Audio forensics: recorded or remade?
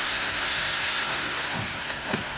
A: remade